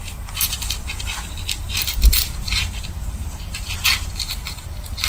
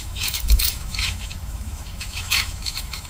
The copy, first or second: second